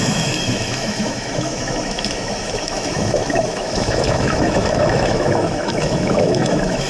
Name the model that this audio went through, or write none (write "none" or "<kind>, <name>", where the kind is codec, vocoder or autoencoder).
autoencoder, DAC-VAE